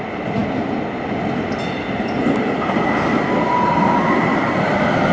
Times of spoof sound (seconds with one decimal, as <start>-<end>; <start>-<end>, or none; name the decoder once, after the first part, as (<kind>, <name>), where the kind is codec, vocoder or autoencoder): none